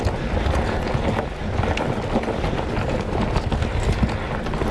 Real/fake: real